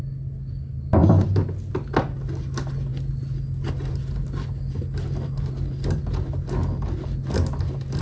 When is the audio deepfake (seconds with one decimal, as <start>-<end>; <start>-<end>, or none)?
none